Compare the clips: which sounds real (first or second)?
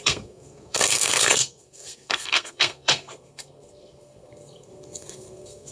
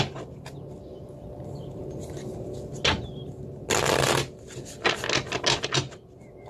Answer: second